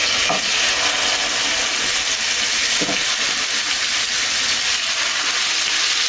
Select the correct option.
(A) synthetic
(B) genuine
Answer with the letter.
B